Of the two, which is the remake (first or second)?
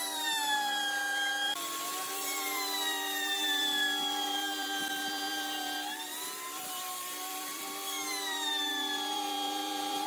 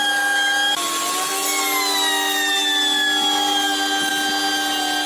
first